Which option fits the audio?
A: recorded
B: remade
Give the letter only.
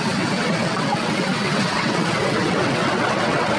B